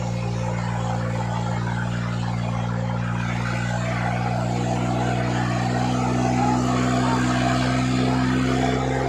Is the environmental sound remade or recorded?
recorded